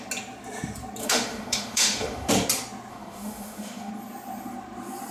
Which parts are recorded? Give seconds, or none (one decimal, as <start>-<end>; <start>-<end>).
0.0-1.0; 2.3-2.9; 3.9-5.1